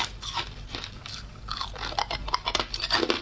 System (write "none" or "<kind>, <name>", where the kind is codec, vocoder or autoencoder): none